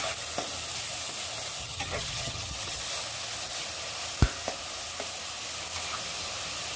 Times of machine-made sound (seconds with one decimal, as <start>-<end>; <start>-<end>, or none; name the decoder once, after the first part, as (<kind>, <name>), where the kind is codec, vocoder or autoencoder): 1.6-2.8 (vocoder, HiFi-GAN)